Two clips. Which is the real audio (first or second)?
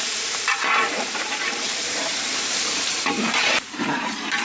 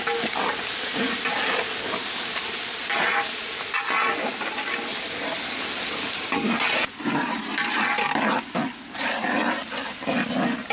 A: second